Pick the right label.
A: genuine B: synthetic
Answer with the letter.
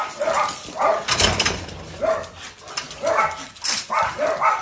A